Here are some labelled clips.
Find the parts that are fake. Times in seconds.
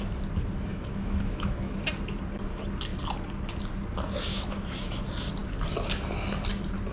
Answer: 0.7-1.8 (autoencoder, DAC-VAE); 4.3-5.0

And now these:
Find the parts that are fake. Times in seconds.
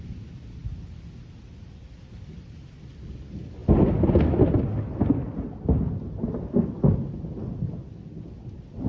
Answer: none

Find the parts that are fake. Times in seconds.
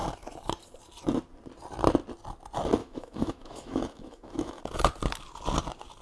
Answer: 2.8-4.6 (autoencoder, DAC-VAE)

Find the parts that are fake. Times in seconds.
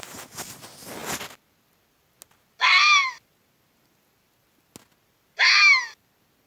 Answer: none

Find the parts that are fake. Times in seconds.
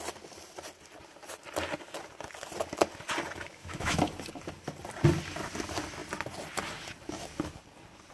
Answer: 3.5-4.0 (autoencoder, DAC-VAE)